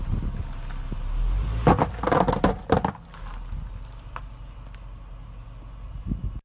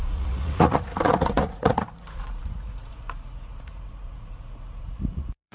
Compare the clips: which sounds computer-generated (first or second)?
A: second